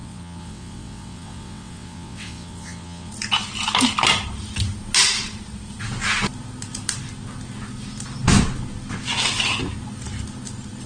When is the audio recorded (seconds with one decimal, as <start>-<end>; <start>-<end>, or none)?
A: 3.1-10.9